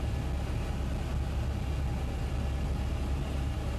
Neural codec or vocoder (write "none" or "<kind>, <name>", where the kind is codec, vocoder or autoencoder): none